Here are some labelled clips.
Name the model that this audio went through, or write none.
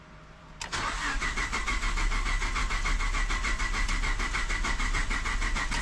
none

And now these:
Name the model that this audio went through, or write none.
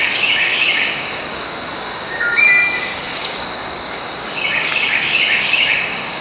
codec, DAC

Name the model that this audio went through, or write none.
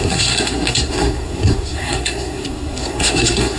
codec, SNAC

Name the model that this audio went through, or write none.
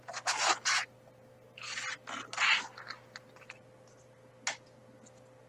none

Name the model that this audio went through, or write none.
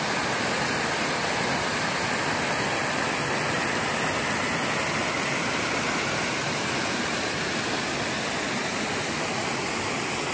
none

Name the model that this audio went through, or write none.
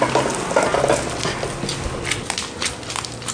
none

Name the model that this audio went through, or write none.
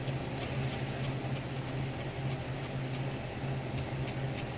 none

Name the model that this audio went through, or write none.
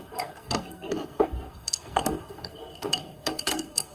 codec, SNAC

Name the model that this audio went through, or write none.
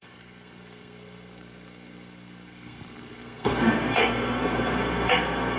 codec, SNAC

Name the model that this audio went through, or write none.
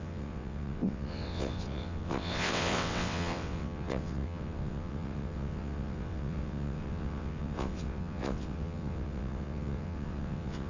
vocoder, WaveNeXt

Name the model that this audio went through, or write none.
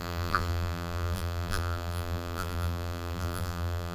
vocoder, BigVGAN v2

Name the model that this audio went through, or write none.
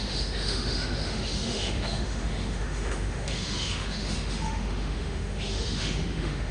autoencoder, DAC-VAE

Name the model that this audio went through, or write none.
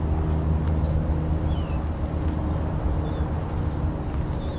none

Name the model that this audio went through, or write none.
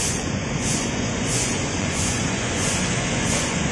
vocoder, Vocos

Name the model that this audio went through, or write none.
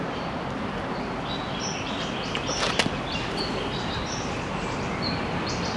none